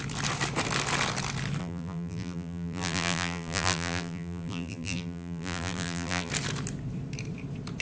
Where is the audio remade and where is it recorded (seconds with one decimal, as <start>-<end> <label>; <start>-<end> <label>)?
0.0-1.6 recorded; 1.6-6.3 remade; 6.3-7.8 recorded

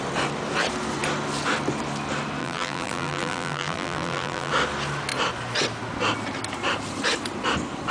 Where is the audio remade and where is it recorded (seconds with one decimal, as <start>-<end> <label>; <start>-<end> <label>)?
0.0-2.4 recorded; 2.4-4.5 remade; 4.5-7.9 recorded